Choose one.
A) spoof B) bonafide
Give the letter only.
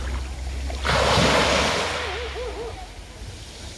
B